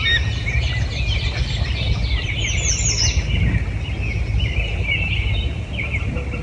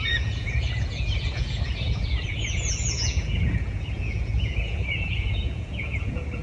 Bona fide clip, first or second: first